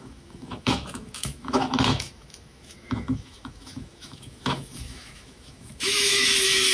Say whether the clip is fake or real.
fake